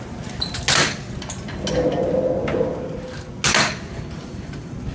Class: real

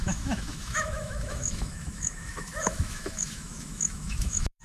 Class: fake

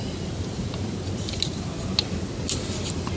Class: real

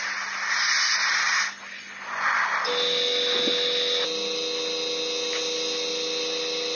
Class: real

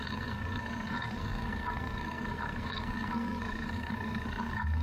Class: fake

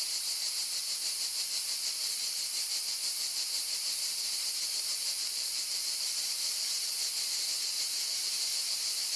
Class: fake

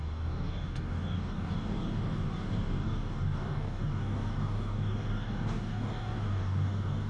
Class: fake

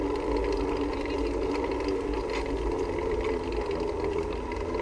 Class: real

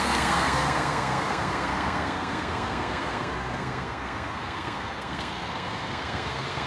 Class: fake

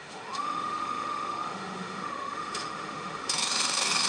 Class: fake